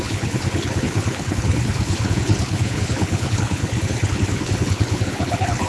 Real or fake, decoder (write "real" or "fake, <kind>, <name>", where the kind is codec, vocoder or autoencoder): fake, codec, HILCodec